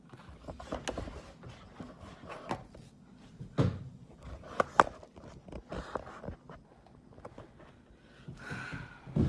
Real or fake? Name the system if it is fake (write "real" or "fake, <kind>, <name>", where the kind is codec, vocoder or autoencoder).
real